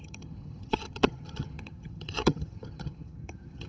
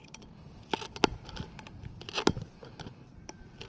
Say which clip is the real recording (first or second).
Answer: second